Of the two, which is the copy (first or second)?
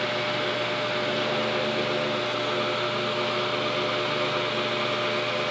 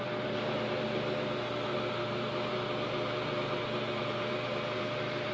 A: second